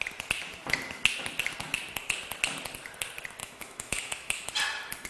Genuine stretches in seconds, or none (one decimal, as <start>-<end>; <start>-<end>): 0.0-3.4; 4.5-5.1